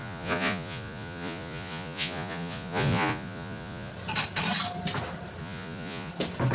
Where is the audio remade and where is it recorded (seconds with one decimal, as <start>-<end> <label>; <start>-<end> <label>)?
0.0-3.9 remade; 3.9-5.4 recorded; 5.4-6.1 remade; 6.1-6.5 recorded